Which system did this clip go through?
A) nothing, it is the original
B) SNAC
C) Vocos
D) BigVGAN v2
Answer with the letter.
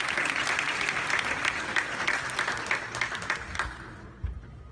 A